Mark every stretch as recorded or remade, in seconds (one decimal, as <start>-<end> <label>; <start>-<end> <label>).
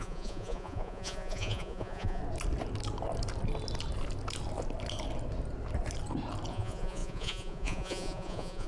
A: 0.0-2.2 remade; 2.2-6.5 recorded; 6.5-8.7 remade